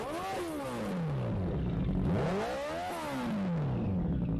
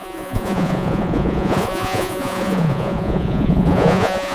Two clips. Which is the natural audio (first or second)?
first